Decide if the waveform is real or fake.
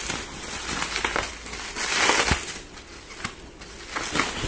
real